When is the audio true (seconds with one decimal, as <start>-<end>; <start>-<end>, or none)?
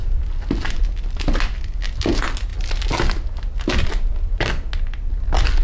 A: 0.0-5.6